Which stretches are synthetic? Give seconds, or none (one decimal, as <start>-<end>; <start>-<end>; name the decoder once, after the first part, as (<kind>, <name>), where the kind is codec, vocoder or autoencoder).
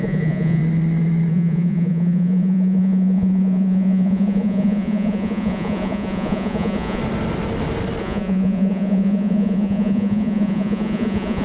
0.0-0.6 (vocoder, Vocos); 1.3-7.0; 8.0-11.4